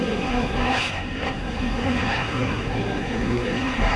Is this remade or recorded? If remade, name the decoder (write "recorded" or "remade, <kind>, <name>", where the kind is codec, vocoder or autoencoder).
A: remade, codec, SNAC